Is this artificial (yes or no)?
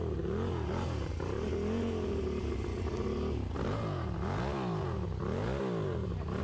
no